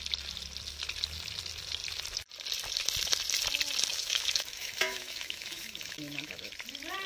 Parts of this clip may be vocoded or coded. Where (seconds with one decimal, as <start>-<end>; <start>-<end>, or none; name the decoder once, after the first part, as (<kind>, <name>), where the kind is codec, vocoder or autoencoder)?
3.9-6.5 (autoencoder, DAC-VAE)